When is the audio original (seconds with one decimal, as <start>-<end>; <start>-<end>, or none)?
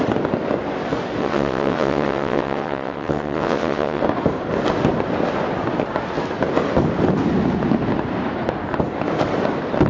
0.0-1.2; 4.0-9.9